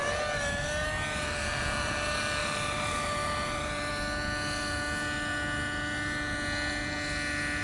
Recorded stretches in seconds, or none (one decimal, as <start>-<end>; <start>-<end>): 0.0-2.4; 3.9-7.6